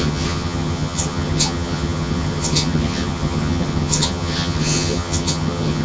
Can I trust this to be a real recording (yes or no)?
no